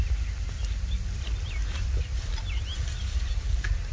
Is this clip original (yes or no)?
yes